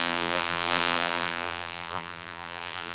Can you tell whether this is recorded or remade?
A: remade